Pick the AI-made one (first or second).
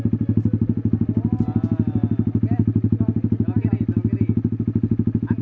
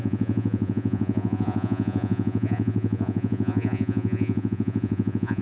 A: second